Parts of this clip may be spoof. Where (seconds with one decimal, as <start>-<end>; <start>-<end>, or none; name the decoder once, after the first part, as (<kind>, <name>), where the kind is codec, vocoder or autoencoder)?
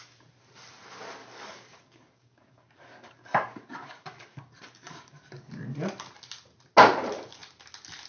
1.2-5.5 (codec, DAC)